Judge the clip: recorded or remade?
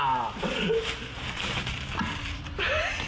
recorded